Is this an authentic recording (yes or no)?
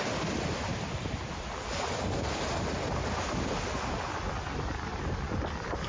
yes